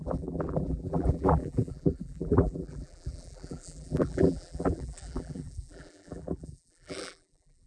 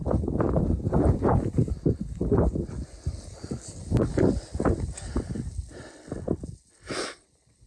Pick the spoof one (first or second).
first